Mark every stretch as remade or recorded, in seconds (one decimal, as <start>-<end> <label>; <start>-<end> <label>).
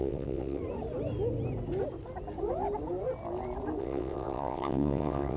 0.0-0.6 remade; 0.6-3.8 recorded; 3.8-5.4 remade